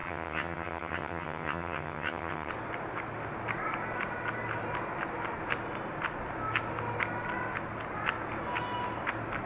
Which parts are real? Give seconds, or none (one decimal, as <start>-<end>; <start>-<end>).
2.5-9.5